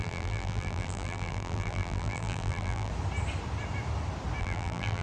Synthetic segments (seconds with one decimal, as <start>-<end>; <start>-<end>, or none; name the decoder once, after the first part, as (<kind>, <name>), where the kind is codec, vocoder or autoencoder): 0.0-2.9 (vocoder, BigVGAN v2); 4.4-5.0